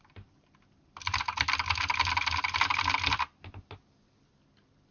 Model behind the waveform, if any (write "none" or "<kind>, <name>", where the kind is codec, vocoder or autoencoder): none